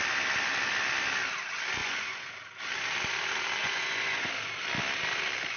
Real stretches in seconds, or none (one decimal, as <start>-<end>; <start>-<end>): 0.0-1.8; 2.3-3.6; 4.3-5.6

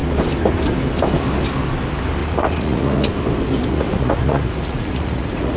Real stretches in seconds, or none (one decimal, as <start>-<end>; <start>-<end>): 0.0-2.2; 3.1-3.7

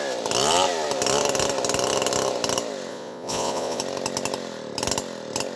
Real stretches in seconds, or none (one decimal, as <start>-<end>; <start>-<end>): 0.0-2.9; 3.8-5.6

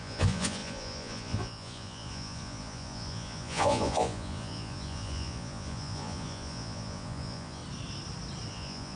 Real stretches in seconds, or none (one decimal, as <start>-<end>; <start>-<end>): 7.6-8.5

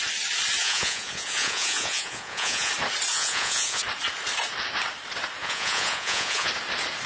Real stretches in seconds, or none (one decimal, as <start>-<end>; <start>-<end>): 0.0-0.6; 2.7-3.1; 3.8-5.4; 6.5-7.1